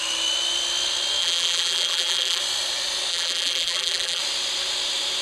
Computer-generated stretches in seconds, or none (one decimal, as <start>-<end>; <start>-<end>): 1.2-2.4; 3.1-4.2